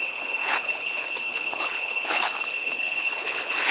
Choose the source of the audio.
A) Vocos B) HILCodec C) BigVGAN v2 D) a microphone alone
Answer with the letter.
B